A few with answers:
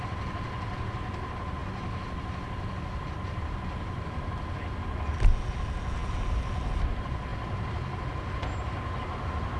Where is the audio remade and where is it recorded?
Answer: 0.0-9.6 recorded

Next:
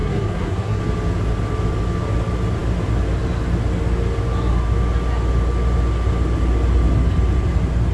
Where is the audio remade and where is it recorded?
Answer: 0.0-0.8 remade; 0.8-7.9 recorded

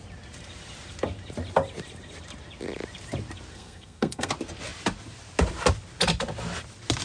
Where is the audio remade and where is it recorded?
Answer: 0.0-3.5 recorded; 3.5-4.3 remade; 4.3-7.0 recorded

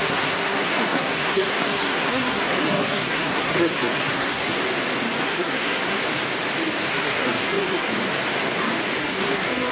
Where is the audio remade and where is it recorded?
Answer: 0.0-4.6 remade; 4.6-5.2 recorded; 5.2-6.0 remade; 6.0-6.9 recorded; 6.9-7.9 remade; 7.9-9.0 recorded; 9.0-9.7 remade

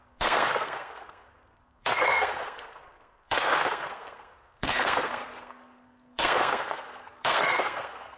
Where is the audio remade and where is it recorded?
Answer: 0.0-8.2 remade

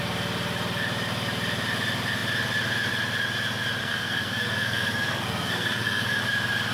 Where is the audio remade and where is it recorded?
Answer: 0.0-3.8 recorded; 3.8-6.2 remade; 6.2-6.7 recorded